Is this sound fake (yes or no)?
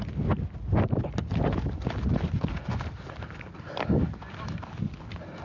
no